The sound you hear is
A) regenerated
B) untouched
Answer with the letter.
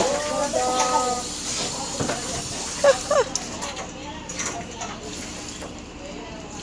B